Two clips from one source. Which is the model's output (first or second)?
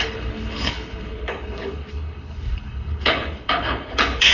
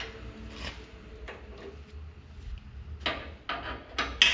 first